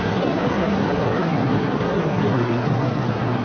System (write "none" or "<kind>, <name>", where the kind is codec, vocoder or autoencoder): codec, SNAC